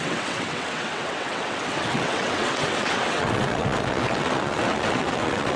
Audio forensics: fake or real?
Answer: fake